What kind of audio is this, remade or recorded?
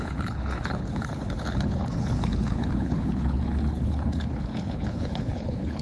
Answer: remade